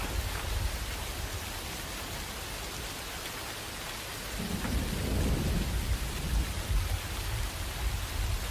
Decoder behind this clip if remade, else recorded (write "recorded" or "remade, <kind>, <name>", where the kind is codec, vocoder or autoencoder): recorded